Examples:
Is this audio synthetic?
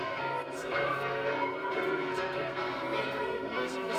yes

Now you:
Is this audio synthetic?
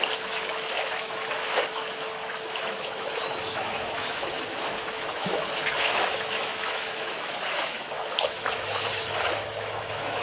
yes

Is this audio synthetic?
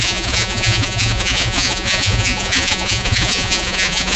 yes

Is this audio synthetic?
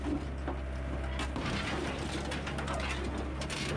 no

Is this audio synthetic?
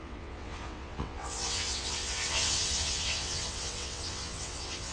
yes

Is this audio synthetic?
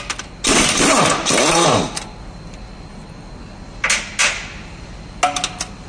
no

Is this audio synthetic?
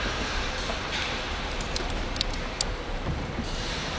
yes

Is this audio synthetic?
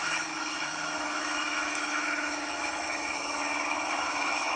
yes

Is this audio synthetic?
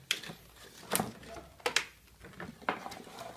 no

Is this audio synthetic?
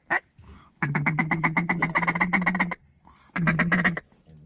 no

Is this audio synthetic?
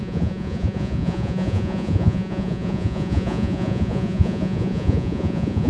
yes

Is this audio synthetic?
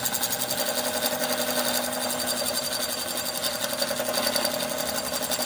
no